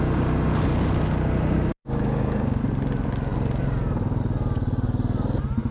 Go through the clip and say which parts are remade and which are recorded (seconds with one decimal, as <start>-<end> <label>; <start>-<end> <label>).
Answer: 0.0-1.7 recorded; 1.7-2.6 remade; 2.6-5.7 recorded